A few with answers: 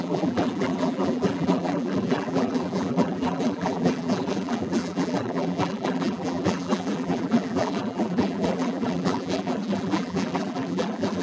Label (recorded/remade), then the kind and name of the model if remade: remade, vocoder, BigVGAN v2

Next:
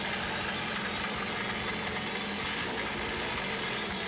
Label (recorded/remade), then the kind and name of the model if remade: recorded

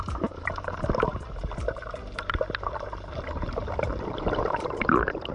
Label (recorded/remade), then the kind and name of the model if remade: remade, vocoder, BigVGAN v2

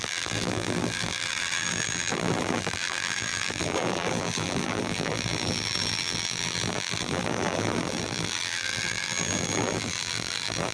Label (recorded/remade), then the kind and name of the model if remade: remade, vocoder, BigVGAN v2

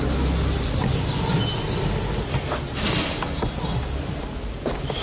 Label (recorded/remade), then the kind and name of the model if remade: recorded